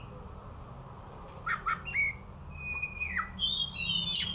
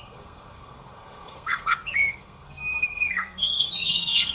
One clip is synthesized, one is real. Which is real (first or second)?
first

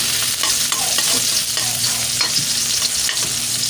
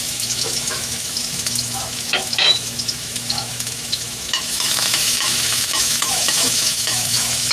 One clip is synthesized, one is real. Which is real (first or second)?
first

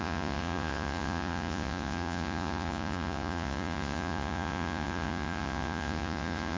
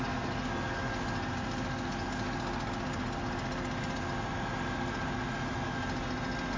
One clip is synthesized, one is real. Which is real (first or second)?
second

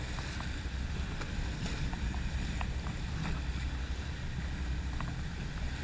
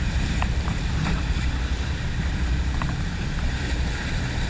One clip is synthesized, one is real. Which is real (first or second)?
first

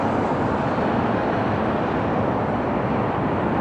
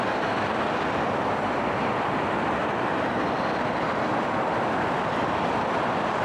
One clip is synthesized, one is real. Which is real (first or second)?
second